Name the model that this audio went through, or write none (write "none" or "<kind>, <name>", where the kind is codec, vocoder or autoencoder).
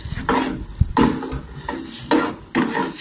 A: none